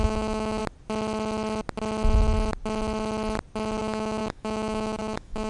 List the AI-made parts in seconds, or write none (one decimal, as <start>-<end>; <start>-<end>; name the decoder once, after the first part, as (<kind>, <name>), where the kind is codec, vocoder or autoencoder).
0.0-0.6 (autoencoder, DAC-VAE); 3.8-5.5